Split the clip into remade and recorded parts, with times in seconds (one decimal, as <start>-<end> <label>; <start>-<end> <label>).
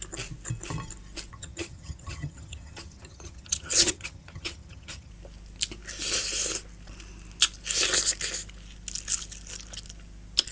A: 0.0-1.3 recorded; 1.3-5.1 remade; 5.1-10.5 recorded